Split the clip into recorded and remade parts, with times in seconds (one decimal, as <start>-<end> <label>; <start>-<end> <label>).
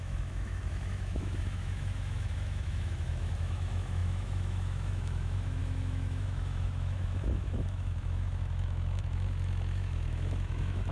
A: 0.0-10.9 remade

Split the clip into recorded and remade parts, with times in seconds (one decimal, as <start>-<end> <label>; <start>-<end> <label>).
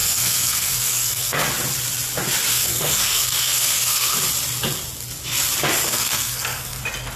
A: 0.0-1.4 remade; 1.4-2.5 recorded; 2.5-4.2 remade; 4.2-5.9 recorded; 5.9-6.8 remade; 6.8-7.2 recorded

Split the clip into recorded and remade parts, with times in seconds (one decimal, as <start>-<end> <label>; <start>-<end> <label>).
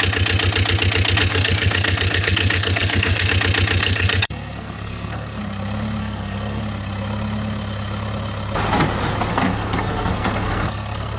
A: 0.0-1.3 recorded; 1.3-3.3 remade; 3.3-3.8 recorded; 3.8-5.4 remade; 5.4-6.0 recorded; 6.0-6.6 remade; 6.6-9.3 recorded; 9.3-11.2 remade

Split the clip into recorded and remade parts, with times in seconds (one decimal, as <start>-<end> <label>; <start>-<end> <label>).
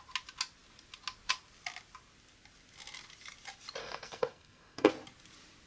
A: 0.0-3.8 recorded; 3.8-4.9 remade; 4.9-5.7 recorded